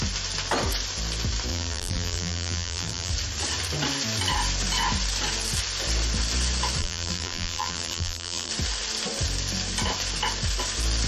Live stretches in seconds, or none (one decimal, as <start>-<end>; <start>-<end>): 0.0-1.5; 3.1-6.8; 8.5-11.1